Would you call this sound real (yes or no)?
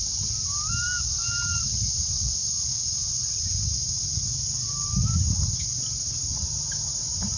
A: yes